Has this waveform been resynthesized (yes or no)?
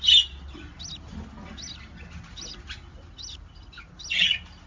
no